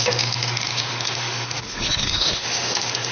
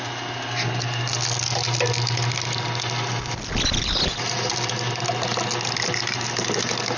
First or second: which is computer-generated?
first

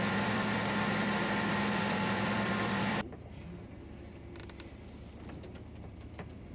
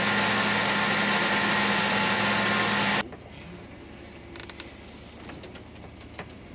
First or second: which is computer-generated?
first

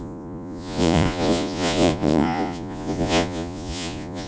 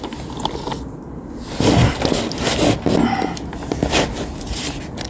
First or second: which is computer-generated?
first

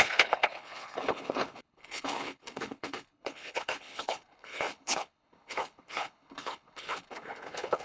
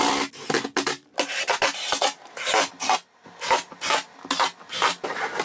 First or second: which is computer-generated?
first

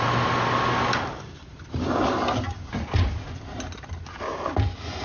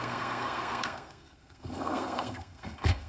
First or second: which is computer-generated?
second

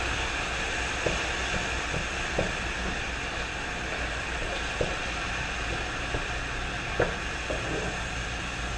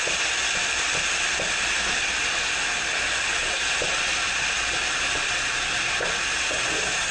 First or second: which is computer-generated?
second